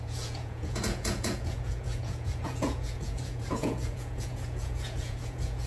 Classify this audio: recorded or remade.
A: remade